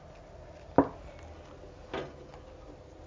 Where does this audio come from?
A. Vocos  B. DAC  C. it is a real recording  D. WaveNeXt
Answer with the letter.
C